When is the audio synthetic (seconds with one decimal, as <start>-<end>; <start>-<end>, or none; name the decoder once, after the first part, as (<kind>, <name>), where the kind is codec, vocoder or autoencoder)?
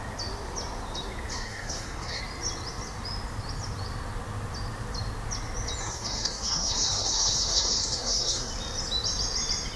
1.3-2.2 (codec, SNAC); 5.8-8.5